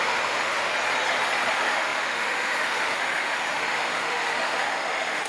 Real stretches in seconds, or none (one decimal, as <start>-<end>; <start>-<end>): 0.7-1.5